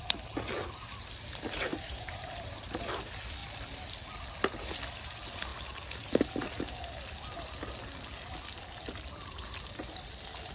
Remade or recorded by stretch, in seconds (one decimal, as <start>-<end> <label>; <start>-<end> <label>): 0.0-1.7 recorded; 1.7-2.8 remade; 2.8-10.5 recorded